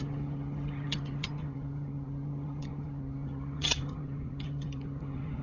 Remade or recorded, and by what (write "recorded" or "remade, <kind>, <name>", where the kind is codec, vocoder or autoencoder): remade, vocoder, HiFi-GAN